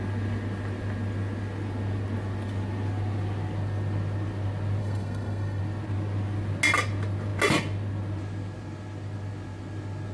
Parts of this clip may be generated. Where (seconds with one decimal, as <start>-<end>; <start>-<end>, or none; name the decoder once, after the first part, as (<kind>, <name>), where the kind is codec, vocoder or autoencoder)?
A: 4.8-5.6 (codec, SNAC)